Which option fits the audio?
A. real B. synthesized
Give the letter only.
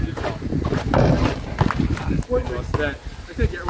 A